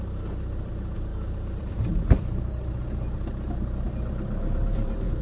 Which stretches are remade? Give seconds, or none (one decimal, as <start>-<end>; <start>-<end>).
0.0-5.2